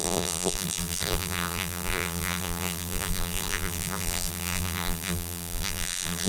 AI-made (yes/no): yes